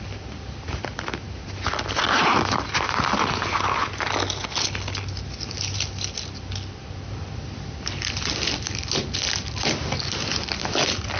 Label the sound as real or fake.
real